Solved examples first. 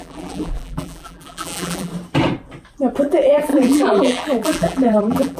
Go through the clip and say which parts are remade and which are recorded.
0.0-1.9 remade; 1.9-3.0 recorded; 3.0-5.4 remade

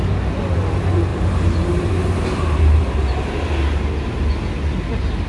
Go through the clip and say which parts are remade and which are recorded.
0.0-1.1 recorded; 1.1-4.3 remade; 4.3-5.3 recorded

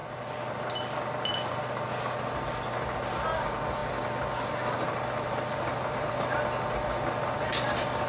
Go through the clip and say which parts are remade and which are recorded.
0.0-8.1 recorded

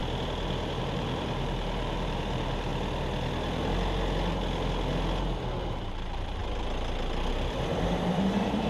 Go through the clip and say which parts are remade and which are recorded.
0.0-0.8 recorded; 0.8-2.7 remade; 2.7-5.6 recorded; 5.6-6.4 remade; 6.4-7.3 recorded; 7.3-8.7 remade